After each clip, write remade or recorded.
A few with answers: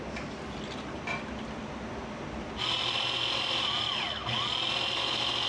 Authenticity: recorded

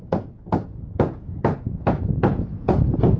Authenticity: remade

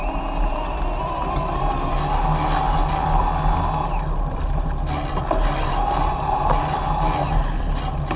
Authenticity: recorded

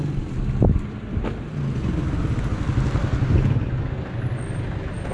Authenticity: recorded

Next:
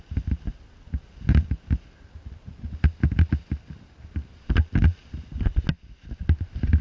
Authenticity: recorded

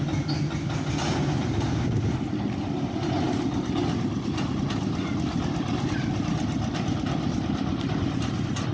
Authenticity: recorded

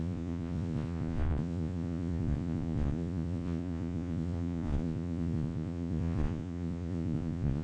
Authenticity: remade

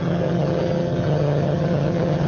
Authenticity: remade